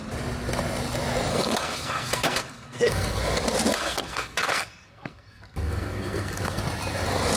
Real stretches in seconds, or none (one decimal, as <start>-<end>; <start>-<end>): 0.0-1.3; 3.2-3.7; 6.6-7.4

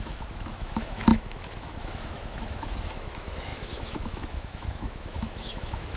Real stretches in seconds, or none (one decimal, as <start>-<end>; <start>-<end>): none

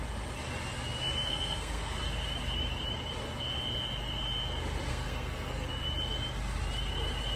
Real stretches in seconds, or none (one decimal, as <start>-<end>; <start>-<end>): 0.0-1.3; 2.0-4.9; 5.7-7.4

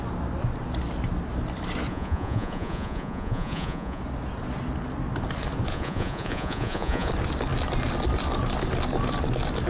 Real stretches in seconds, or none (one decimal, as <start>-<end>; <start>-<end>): 0.0-1.9; 4.0-5.7; 7.1-9.7

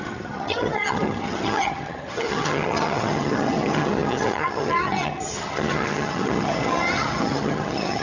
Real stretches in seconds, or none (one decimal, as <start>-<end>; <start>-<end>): none

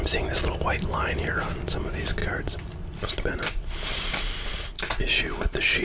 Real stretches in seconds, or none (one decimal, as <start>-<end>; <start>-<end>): 0.0-5.8

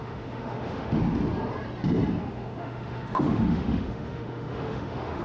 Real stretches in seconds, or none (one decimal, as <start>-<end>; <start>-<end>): 1.0-2.2